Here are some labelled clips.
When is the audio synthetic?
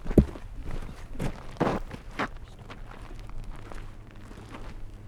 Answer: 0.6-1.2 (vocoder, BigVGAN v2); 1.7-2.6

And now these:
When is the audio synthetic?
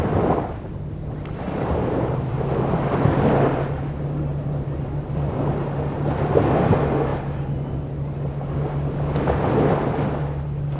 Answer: none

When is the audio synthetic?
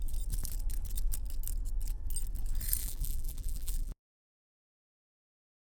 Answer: 2.8-5.6 (vocoder, BigVGAN v2)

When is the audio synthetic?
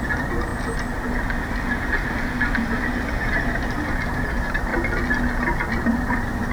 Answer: 0.0-0.5 (vocoder, BigVGAN v2); 4.1-4.7; 5.7-6.5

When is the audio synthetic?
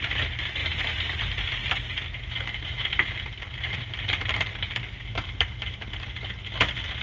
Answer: 0.6-1.2 (vocoder, BigVGAN v2); 1.6-5.8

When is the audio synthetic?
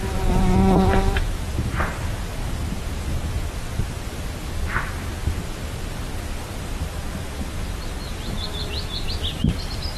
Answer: 6.7-9.1 (vocoder, BigVGAN v2)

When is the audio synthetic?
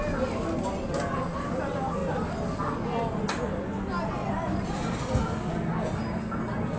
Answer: 2.0-2.6 (vocoder, BigVGAN v2); 4.2-5.1